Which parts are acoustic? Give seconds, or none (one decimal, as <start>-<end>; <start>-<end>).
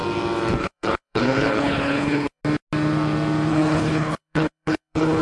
0.0-0.6; 2.4-3.5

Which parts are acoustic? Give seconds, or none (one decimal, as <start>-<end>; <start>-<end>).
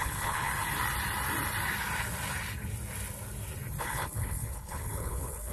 0.5-3.8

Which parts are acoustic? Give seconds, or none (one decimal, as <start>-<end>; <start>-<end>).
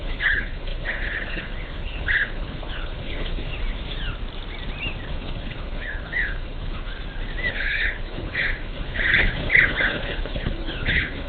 3.5-5.1; 6.9-7.5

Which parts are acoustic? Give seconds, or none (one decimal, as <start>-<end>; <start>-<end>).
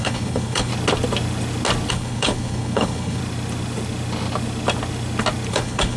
0.7-1.9; 3.2-5.5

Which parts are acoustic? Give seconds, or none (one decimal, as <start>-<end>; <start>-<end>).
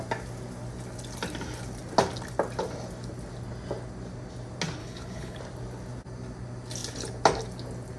0.0-4.8; 5.4-8.0